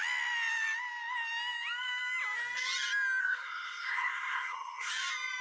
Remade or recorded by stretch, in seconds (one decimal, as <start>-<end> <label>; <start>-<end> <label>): 0.0-3.2 recorded; 3.2-4.9 remade; 4.9-5.4 recorded